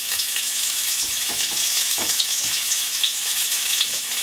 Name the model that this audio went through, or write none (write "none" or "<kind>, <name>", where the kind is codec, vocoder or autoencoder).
autoencoder, DAC-VAE